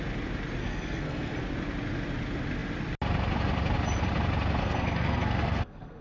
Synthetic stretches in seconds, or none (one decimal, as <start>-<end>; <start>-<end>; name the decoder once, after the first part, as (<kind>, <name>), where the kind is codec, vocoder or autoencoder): 0.6-1.4 (codec, SNAC); 4.6-6.0